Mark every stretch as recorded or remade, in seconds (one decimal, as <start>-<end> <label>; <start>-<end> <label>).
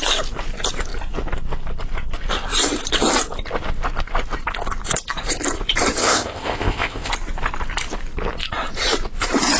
0.0-6.0 recorded; 6.0-7.1 remade; 7.1-9.6 recorded